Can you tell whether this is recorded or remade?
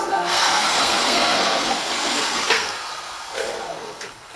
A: remade